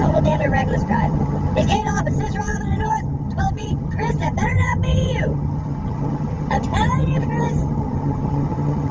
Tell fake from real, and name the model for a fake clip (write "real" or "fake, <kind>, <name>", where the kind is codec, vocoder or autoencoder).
fake, vocoder, HiFi-GAN